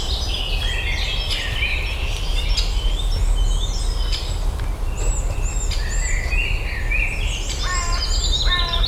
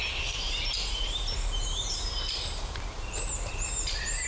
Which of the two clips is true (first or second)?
first